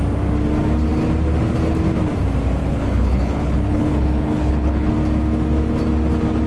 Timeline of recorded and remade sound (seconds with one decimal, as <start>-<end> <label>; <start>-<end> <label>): 0.0-2.6 recorded; 2.6-4.9 remade; 4.9-6.5 recorded